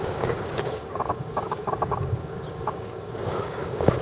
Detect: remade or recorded remade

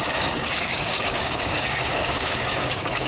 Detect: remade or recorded remade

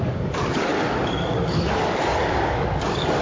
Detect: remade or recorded remade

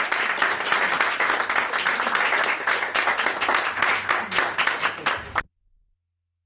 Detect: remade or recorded recorded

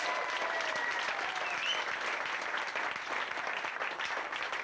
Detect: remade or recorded recorded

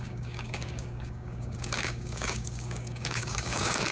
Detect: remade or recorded remade